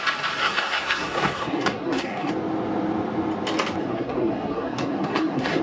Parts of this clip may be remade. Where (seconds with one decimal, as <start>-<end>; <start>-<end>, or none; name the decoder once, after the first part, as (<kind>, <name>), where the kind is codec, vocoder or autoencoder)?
0.4-2.3 (codec, SNAC); 3.8-5.6